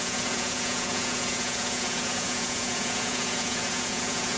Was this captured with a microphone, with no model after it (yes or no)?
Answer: no